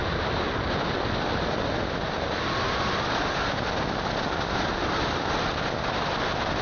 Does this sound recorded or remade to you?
recorded